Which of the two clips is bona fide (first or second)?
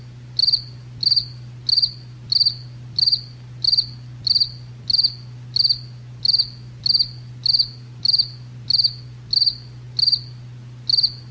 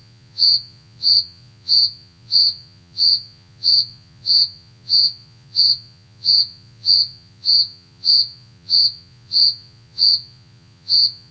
first